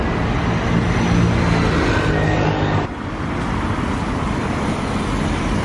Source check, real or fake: real